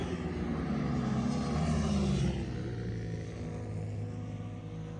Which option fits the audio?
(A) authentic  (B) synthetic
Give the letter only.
A